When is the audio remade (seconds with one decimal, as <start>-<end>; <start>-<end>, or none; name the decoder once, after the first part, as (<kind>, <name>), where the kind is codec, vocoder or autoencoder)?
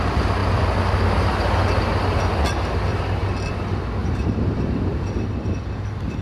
4.0-5.1 (vocoder, BigVGAN v2)